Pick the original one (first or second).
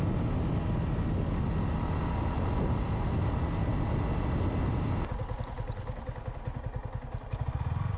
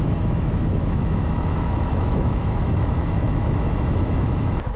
first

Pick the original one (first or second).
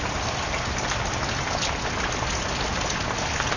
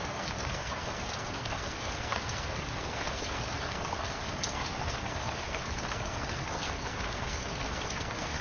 first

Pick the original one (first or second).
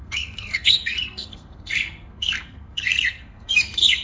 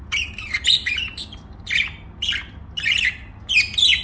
second